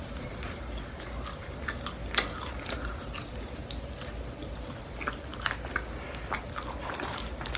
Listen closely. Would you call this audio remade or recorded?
recorded